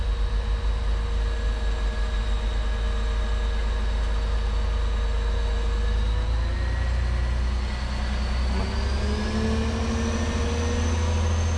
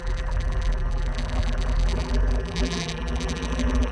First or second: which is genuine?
first